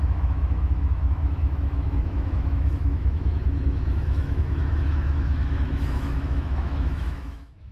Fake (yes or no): yes